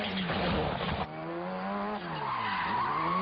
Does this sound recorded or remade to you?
recorded